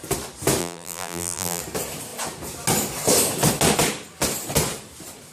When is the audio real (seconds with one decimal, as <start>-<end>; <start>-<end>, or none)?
0.0-0.6; 1.6-5.3